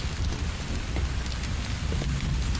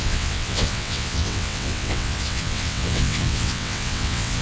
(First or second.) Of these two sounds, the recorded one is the first